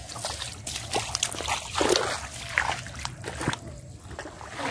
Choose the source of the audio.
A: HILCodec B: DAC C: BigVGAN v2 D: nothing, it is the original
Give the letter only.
D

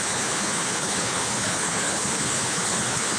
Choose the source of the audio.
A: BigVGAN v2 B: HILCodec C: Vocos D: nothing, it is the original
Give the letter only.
B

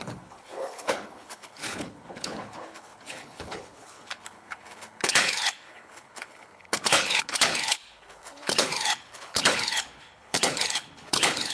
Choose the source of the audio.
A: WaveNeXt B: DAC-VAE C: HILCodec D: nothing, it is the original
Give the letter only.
C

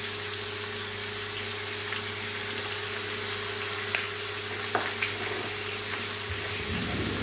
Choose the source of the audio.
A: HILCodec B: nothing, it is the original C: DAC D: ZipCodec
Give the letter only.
B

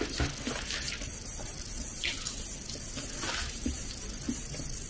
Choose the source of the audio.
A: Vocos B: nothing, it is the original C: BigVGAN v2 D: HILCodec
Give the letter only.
B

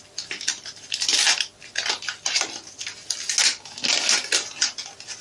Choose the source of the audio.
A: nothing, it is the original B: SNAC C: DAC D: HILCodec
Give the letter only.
A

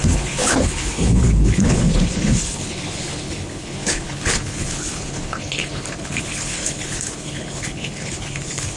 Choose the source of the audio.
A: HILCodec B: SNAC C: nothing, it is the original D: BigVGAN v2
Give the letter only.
A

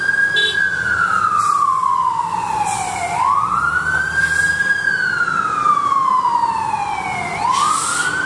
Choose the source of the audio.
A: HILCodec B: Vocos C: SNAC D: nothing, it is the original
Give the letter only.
D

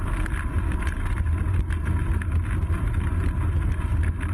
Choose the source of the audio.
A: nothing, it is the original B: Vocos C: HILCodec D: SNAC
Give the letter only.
A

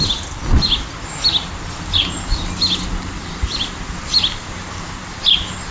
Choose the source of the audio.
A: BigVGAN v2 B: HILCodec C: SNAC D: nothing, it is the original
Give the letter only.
D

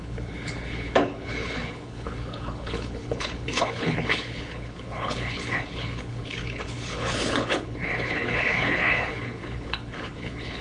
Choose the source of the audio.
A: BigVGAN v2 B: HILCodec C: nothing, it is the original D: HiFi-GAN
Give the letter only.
B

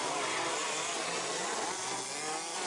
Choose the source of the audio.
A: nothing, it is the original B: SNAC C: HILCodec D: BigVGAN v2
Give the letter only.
A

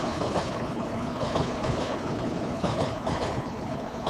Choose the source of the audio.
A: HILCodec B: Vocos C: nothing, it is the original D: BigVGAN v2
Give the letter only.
A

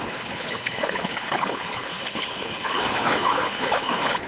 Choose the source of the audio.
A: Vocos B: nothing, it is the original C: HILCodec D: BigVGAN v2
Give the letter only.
C